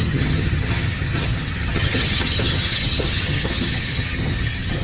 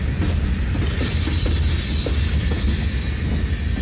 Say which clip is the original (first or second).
second